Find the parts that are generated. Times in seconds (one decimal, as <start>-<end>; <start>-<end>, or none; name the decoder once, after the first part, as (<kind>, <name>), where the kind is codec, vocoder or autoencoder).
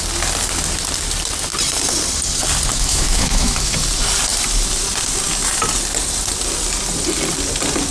2.7-3.5 (autoencoder, DAC-VAE)